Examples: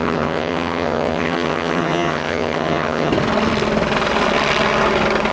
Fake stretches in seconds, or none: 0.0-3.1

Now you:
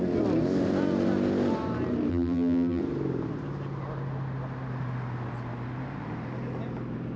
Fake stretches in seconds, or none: 2.1-2.8

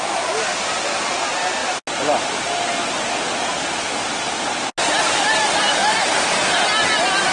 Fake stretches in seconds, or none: none

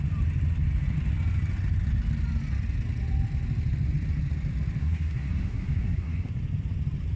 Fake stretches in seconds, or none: 4.8-6.3